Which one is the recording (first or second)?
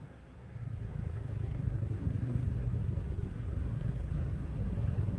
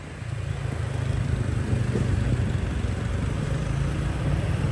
second